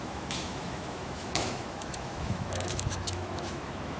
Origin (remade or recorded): remade